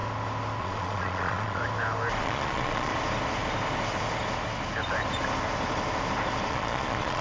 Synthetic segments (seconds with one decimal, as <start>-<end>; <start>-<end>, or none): 0.6-1.6; 2.2-2.9; 6.5-7.2